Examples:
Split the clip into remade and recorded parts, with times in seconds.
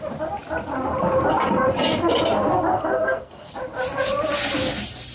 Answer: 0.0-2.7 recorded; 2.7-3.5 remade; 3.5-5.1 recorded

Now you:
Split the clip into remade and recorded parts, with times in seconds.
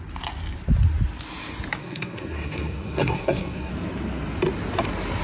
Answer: 0.0-1.8 recorded; 1.8-3.7 remade; 3.7-5.2 recorded